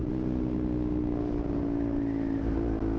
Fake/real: real